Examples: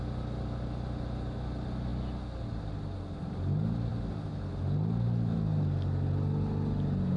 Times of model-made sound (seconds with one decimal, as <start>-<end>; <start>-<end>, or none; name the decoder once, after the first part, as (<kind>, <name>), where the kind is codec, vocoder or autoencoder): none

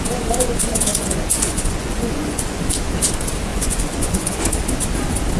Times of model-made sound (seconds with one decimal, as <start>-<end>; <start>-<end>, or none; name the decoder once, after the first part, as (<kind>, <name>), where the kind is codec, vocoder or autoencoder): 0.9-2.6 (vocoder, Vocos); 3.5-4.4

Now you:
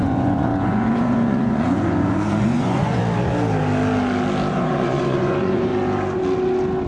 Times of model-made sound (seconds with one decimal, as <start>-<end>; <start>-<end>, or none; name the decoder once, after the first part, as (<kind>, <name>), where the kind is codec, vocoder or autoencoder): 0.0-3.0 (vocoder, Vocos); 4.5-5.7

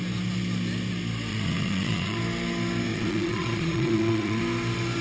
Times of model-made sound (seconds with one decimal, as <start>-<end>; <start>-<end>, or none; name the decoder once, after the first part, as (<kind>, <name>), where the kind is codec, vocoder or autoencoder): 1.3-2.2 (vocoder, Vocos); 2.9-4.4

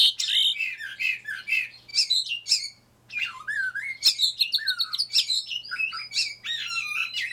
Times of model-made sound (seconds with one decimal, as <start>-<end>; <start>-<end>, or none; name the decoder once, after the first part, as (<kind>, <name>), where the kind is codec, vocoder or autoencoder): none

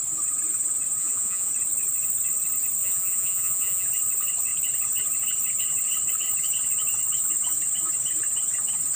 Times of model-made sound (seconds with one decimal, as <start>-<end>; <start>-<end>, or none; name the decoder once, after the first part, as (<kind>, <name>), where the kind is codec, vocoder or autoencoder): 1.0-1.5 (vocoder, Vocos); 2.8-3.9

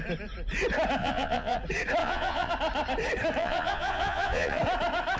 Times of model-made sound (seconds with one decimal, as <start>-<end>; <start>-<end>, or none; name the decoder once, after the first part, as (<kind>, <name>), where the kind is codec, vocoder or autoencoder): 1.0-1.6 (vocoder, Vocos); 2.0-2.5; 3.4-4.6